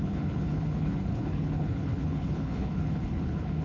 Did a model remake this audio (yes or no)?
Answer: yes